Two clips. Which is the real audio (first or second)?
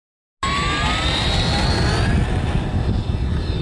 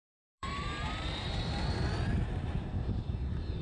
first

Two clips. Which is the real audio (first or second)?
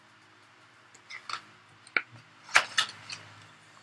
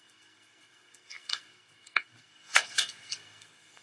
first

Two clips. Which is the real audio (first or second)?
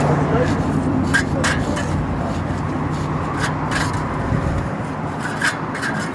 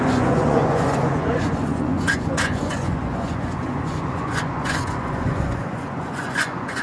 first